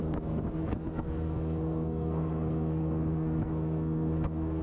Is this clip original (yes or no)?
no